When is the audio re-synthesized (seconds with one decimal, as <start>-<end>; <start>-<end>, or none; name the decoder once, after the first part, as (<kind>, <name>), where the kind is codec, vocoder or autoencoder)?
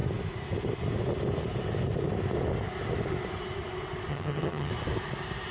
4.1-4.7 (vocoder, HiFi-GAN)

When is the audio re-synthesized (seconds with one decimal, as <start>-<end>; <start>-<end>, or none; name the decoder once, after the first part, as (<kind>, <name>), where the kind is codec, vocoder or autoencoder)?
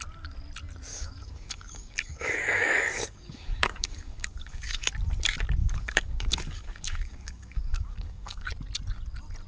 0.9-4.9 (codec, DAC); 5.6-8.5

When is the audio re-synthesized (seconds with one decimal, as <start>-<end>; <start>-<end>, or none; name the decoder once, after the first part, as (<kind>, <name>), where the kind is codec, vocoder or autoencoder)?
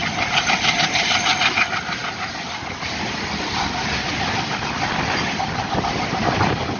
none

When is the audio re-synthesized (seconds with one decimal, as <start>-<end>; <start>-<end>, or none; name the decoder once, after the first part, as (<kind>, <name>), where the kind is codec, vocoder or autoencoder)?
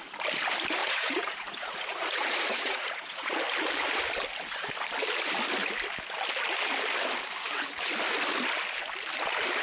0.8-3.3 (vocoder, Vocos)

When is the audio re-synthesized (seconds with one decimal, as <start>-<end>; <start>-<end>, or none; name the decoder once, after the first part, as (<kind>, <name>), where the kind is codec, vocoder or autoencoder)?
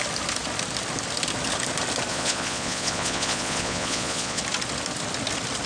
2.1-4.4 (vocoder, Vocos)